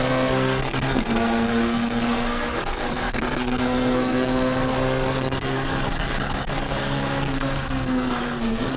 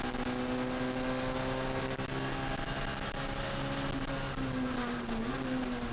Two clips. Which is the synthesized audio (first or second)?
first